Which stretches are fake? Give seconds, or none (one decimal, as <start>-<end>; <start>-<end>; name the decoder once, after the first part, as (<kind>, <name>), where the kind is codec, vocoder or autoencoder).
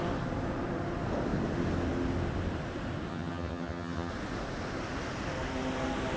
3.1-4.1 (vocoder, HiFi-GAN)